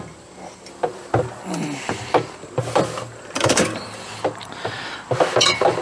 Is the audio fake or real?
fake